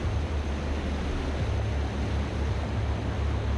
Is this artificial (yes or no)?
no